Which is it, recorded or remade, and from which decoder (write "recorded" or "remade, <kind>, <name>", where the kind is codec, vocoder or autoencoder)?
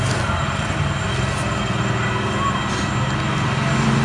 recorded